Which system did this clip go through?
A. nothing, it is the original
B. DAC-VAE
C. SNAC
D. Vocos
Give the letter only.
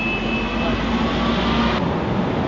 A